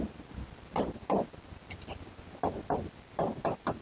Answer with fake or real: real